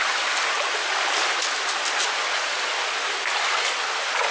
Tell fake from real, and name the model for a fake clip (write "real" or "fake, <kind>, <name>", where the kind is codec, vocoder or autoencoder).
real